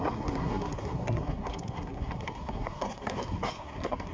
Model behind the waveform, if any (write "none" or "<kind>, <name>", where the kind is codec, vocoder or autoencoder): codec, SNAC